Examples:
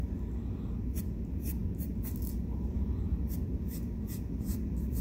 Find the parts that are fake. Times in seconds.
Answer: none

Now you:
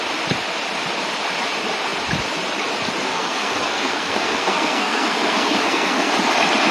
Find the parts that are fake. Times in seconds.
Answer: 3.1-6.1 (codec, SNAC)

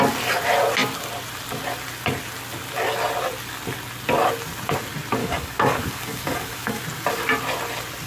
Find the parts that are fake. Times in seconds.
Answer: 5.2-6.8 (codec, DAC)

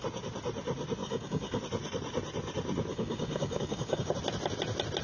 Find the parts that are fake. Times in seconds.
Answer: 1.0-1.6 (codec, DAC); 2.9-4.1

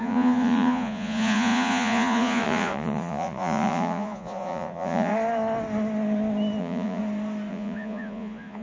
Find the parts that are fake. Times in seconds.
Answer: 0.0-5.1 (vocoder, Vocos); 6.6-7.0; 7.5-8.6

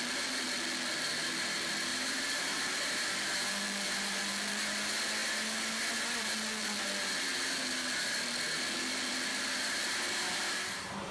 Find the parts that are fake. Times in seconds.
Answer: 1.9-2.6 (vocoder, BigVGAN v2)

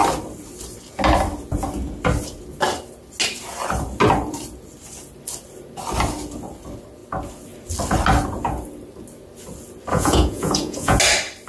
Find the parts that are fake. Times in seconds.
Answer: 9.9-11.0 (vocoder, Vocos)

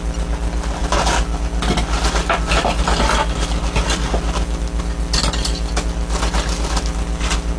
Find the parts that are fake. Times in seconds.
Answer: none